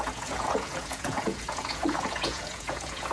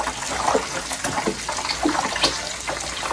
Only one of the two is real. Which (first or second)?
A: second